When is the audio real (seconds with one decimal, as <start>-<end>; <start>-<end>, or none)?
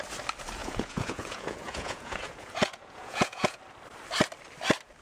0.0-0.6; 3.6-5.0